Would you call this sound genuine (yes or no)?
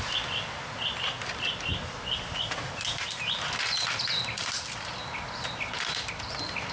yes